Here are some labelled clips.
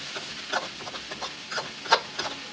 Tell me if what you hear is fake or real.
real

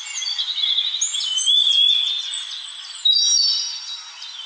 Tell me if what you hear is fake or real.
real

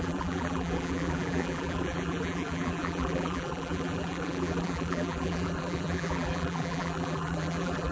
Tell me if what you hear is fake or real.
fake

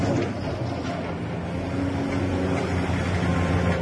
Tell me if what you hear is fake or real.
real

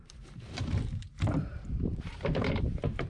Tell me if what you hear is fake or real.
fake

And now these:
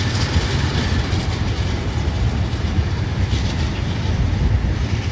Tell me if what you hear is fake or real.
real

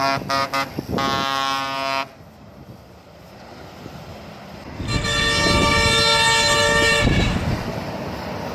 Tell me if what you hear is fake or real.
real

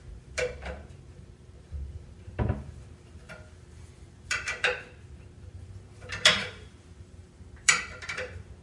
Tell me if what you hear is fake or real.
fake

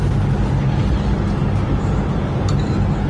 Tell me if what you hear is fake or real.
real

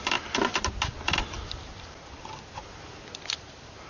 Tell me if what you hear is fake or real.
fake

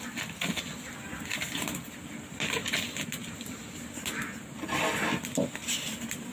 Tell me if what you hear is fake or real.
real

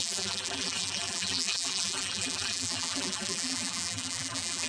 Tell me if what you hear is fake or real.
fake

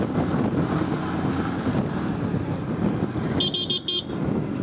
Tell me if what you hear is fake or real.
real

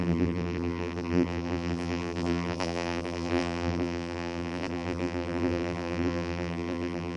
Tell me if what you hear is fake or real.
fake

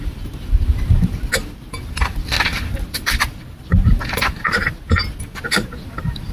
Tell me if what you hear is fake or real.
real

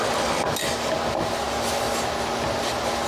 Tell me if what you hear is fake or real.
real